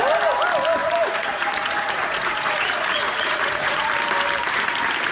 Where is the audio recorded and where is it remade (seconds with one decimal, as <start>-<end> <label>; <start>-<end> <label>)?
0.0-0.8 recorded; 0.8-3.9 remade; 3.9-5.1 recorded